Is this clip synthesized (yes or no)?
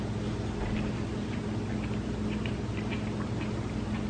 no